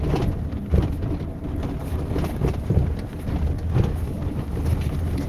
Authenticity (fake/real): real